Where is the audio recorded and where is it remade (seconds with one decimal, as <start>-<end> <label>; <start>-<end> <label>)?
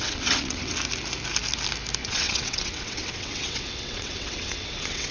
0.0-0.7 remade; 0.7-2.0 recorded; 2.0-5.1 remade